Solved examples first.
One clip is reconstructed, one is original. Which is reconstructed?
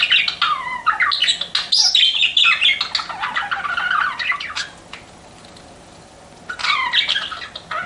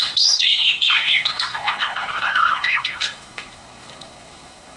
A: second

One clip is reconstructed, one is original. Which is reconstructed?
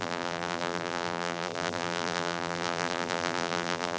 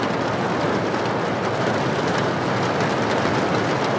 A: first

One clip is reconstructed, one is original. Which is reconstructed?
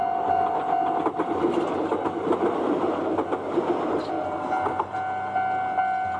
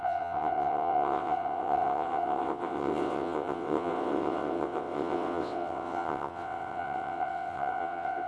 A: second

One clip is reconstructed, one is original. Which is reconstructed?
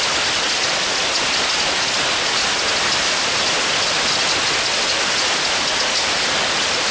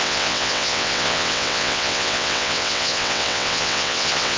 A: second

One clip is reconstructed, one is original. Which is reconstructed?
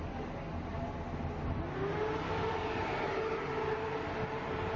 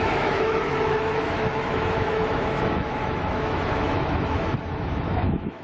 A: second